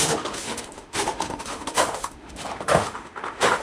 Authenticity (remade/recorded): remade